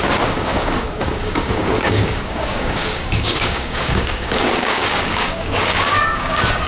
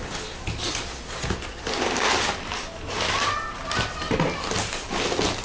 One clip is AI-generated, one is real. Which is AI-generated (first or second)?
first